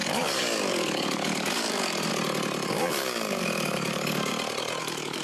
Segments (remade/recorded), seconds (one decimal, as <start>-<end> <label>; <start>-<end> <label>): 0.0-2.1 remade; 2.1-2.7 recorded; 2.7-4.3 remade; 4.3-4.8 recorded; 4.8-5.2 remade

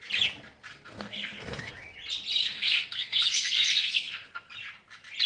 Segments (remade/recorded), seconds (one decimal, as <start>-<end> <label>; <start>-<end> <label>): 0.0-0.7 recorded; 0.7-1.7 remade; 1.7-2.4 recorded; 2.4-4.5 remade; 4.5-5.3 recorded

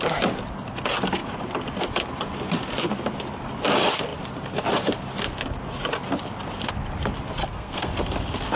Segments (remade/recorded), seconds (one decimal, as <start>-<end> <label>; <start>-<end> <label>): 0.0-7.4 recorded; 7.4-7.9 remade; 7.9-8.6 recorded

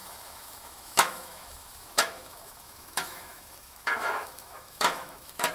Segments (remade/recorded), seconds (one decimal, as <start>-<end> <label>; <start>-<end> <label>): 0.0-5.5 remade

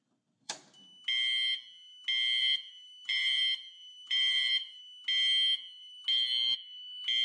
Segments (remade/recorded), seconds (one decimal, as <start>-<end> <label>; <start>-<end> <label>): 0.0-0.6 remade; 0.6-2.4 recorded; 2.4-3.4 remade; 3.4-3.8 recorded; 3.8-4.8 remade; 4.8-7.2 recorded

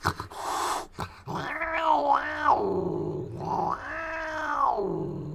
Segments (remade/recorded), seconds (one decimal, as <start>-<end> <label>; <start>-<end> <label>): 0.0-5.3 recorded